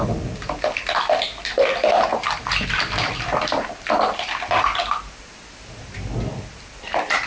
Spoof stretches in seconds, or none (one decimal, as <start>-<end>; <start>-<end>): none